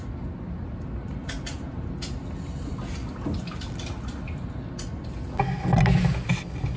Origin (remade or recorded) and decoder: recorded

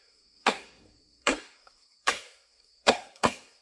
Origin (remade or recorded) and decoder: remade, codec, SNAC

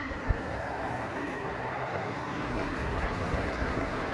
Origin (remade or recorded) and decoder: remade, codec, SNAC